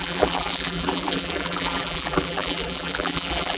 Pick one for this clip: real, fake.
fake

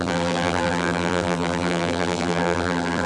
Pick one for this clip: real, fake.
fake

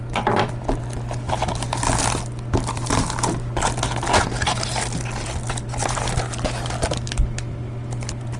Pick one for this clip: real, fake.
real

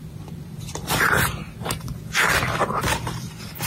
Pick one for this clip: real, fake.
fake